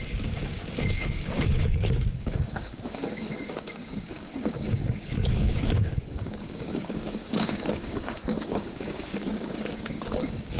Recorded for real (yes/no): no